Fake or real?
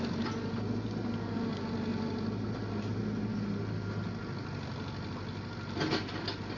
real